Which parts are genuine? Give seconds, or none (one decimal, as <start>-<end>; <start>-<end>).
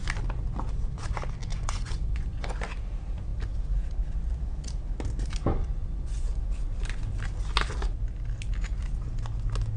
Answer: 0.0-1.5; 2.5-5.5; 6.4-9.8